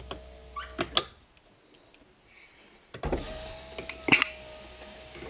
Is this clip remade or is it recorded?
recorded